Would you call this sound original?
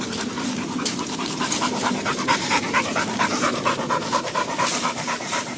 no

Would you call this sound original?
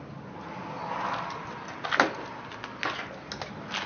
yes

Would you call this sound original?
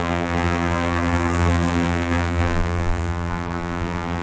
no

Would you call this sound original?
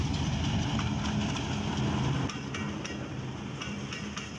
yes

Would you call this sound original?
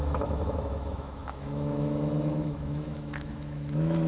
no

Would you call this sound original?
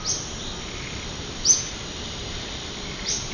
yes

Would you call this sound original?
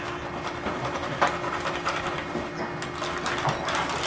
yes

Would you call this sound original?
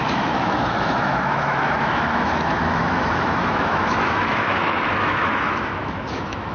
no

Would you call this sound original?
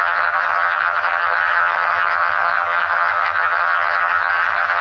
no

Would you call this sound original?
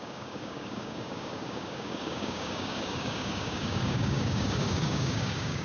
no